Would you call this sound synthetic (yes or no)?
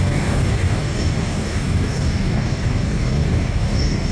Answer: yes